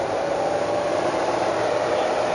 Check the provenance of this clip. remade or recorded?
remade